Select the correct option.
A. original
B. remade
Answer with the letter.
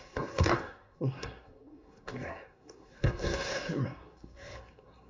B